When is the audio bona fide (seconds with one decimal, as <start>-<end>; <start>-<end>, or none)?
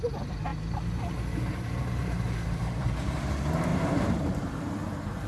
0.0-0.5; 3.2-3.7